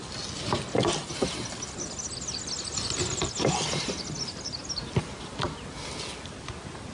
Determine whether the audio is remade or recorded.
recorded